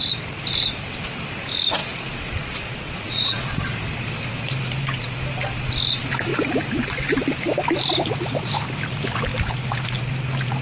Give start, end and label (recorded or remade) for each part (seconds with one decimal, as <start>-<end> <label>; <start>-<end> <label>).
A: 0.0-1.8 recorded; 1.8-3.5 remade; 3.5-10.6 recorded